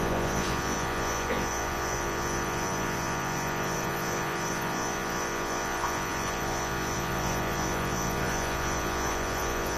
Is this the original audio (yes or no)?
no